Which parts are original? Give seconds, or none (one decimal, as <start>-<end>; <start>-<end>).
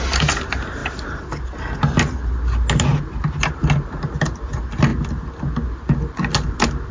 0.0-6.9